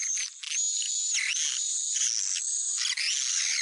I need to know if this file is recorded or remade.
recorded